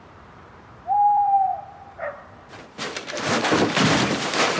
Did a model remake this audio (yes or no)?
yes